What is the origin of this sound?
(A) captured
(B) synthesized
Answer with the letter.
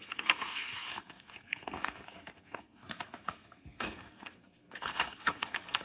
B